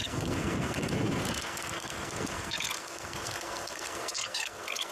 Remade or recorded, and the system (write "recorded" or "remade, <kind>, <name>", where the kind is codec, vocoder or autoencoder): remade, codec, SNAC